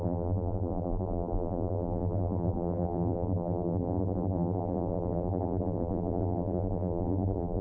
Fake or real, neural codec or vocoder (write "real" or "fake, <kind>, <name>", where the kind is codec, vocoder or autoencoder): fake, vocoder, BigVGAN v2